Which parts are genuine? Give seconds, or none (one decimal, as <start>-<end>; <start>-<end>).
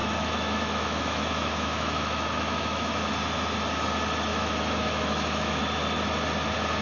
3.1-4.3; 5.6-6.8